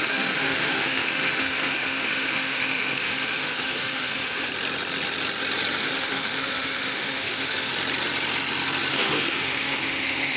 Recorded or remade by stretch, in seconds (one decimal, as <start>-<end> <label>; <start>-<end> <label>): 0.0-4.5 remade; 4.5-5.8 recorded; 5.8-7.7 remade; 7.7-8.9 recorded; 8.9-10.4 remade